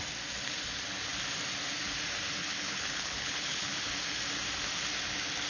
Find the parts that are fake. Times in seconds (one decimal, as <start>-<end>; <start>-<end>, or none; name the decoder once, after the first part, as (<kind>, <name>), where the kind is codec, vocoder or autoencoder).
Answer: 2.4-3.9 (codec, HILCodec)